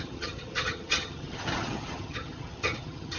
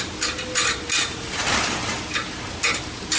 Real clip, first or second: second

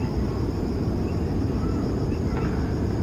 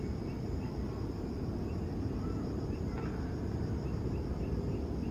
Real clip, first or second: second